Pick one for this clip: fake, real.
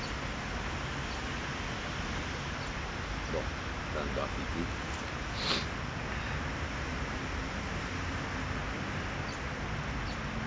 real